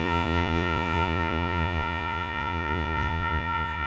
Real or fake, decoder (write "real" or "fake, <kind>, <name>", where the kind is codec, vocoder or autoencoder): fake, vocoder, Vocos